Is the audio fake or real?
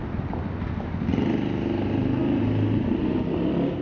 real